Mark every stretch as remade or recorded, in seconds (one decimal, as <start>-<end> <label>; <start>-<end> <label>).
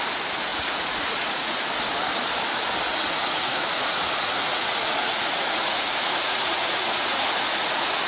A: 0.0-0.5 recorded; 0.5-1.6 remade; 1.6-2.9 recorded; 2.9-8.1 remade